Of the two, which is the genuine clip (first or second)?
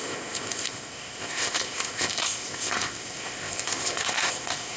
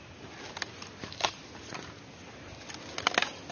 second